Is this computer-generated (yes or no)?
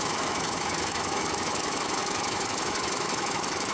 yes